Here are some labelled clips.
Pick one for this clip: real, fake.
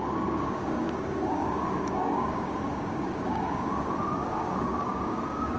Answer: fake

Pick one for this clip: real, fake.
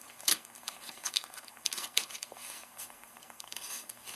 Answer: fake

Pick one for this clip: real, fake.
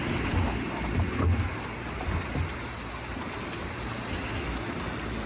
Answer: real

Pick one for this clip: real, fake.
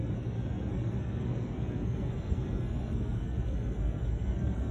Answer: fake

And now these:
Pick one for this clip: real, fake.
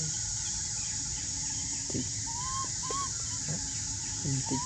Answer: real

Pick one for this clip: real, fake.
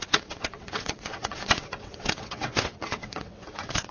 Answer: fake